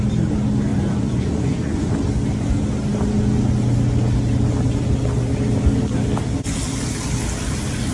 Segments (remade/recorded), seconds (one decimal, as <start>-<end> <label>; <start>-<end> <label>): 0.0-0.7 recorded; 0.7-1.9 remade; 1.9-7.9 recorded